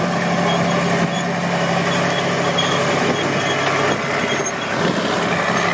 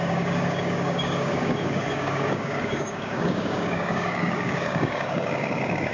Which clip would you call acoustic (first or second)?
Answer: first